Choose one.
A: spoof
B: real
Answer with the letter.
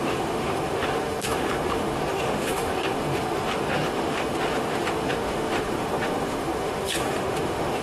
A